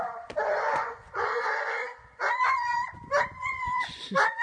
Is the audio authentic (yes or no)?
no